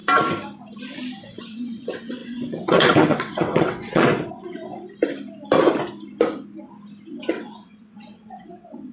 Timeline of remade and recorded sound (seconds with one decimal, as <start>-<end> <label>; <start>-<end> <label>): 0.0-1.2 recorded; 1.2-4.7 remade; 4.7-7.1 recorded; 7.1-8.9 remade